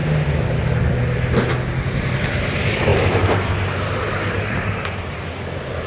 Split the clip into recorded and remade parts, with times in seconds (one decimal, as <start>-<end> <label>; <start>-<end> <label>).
0.0-2.9 recorded; 2.9-5.2 remade; 5.2-5.9 recorded